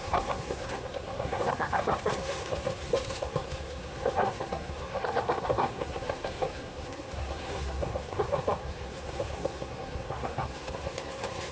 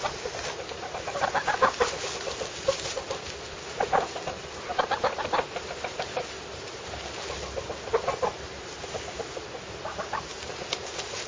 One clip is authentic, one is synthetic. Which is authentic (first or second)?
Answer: second